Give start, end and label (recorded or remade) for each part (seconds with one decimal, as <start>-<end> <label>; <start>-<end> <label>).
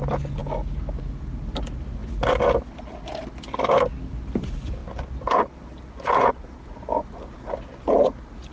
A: 0.0-8.5 recorded